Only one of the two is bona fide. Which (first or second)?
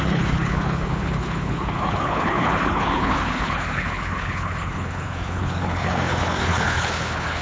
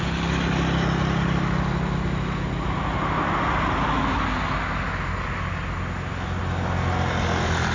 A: second